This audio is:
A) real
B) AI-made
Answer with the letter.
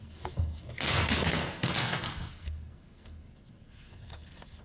B